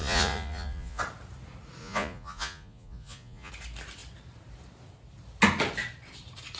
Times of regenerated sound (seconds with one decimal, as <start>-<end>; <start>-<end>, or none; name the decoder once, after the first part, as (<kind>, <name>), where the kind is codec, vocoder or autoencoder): 0.0-1.0 (vocoder, Vocos); 1.8-3.5